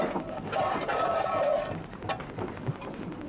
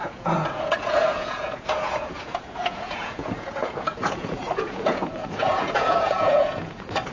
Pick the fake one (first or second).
second